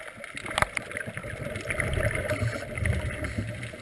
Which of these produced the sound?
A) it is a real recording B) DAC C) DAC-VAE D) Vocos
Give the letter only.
A